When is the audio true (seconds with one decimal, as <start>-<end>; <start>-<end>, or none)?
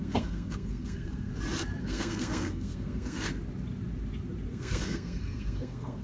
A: 1.3-1.8; 3.3-4.5